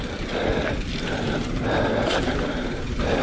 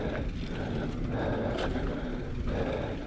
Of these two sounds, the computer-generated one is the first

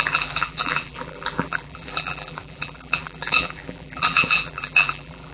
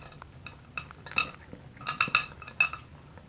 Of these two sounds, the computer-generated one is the first